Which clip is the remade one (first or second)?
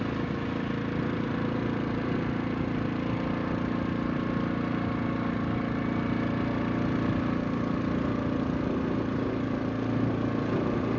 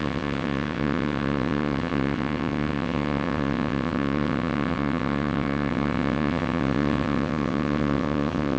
second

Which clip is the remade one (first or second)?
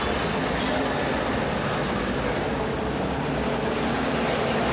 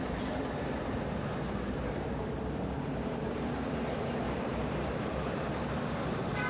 second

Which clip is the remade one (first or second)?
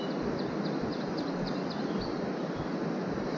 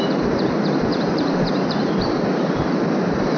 second